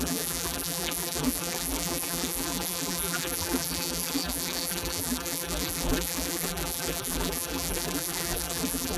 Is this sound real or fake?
fake